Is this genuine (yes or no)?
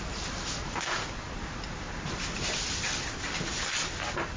yes